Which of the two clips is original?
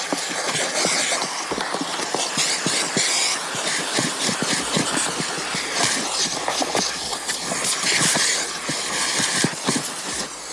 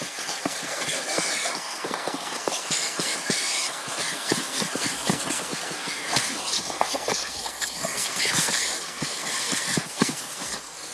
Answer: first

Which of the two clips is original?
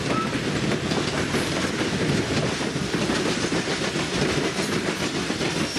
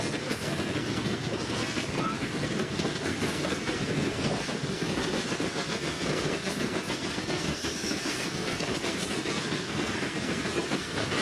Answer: first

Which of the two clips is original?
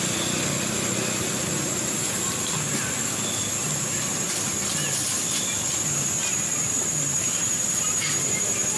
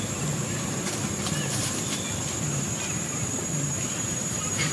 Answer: first